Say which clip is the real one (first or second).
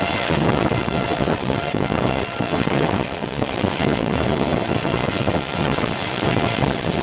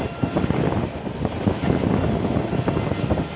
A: second